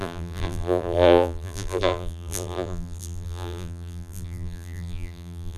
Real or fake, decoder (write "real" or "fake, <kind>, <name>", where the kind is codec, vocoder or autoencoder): fake, vocoder, BigVGAN v2